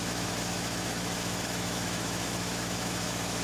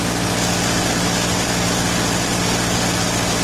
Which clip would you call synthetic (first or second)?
first